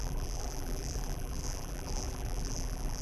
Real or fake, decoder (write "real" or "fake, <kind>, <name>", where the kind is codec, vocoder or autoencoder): fake, vocoder, BigVGAN v2